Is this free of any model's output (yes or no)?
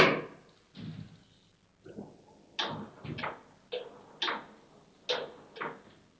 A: yes